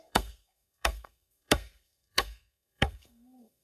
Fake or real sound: fake